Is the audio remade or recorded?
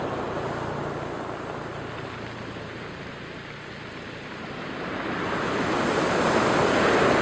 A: recorded